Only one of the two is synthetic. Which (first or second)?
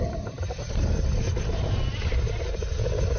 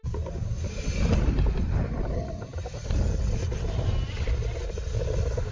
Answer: first